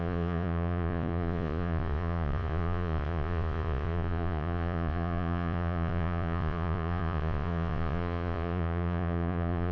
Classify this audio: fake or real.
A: fake